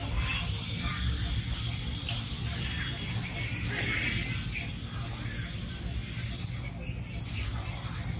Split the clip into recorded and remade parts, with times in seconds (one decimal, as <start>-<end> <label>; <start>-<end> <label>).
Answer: 0.0-8.2 recorded